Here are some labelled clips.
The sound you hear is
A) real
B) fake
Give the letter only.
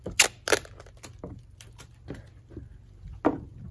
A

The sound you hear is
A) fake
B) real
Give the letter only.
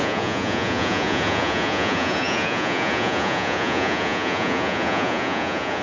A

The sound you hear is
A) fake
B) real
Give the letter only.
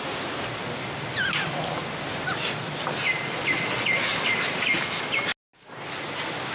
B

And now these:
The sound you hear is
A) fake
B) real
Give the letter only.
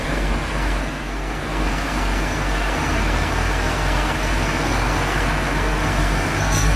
A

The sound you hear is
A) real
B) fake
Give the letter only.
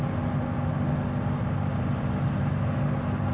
A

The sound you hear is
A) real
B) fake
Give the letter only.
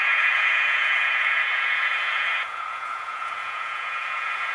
B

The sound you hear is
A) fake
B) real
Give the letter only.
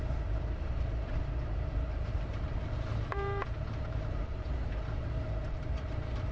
A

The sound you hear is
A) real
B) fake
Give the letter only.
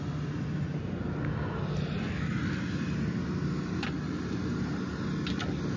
A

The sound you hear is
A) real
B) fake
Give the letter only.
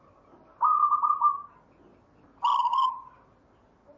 A